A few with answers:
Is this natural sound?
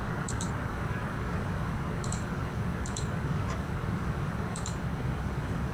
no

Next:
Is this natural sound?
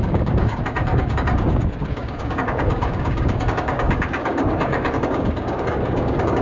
no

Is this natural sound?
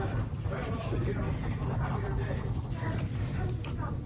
no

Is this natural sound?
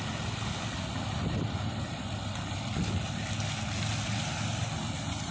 yes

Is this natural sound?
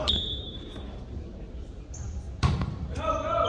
no